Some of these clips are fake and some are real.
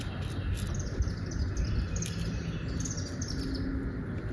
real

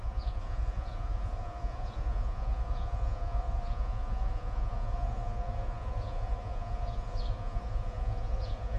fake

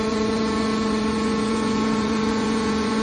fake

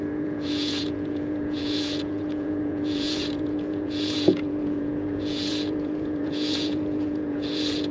fake